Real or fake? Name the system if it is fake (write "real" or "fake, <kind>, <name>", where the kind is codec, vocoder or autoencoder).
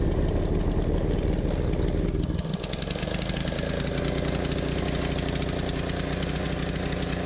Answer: real